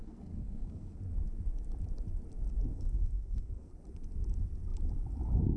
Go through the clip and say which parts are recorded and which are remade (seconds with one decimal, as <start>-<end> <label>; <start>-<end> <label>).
0.0-1.0 remade; 1.0-2.7 recorded; 2.7-3.7 remade; 3.7-5.6 recorded